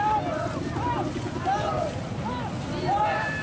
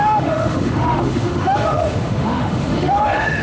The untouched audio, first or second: first